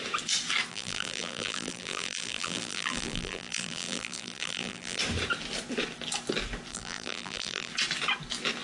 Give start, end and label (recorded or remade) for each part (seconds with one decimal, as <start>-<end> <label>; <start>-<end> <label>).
0.0-0.7 recorded; 0.7-5.0 remade; 5.0-6.7 recorded; 6.7-7.7 remade; 7.7-8.6 recorded